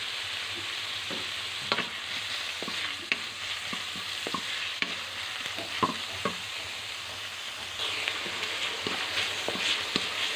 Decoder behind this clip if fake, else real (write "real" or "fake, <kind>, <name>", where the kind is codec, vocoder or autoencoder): real